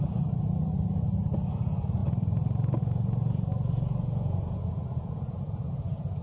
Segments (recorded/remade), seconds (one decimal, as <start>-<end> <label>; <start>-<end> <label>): 0.0-2.0 remade; 2.0-2.8 recorded; 2.8-6.2 remade